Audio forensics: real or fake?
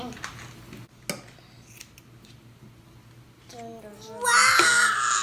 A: real